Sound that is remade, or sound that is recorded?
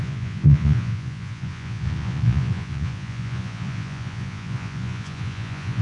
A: remade